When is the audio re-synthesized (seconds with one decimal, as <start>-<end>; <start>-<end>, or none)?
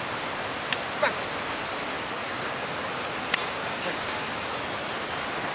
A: 2.2-2.8; 3.4-4.5